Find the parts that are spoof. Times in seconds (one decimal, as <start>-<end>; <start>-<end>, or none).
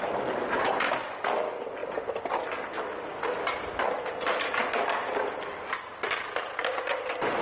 none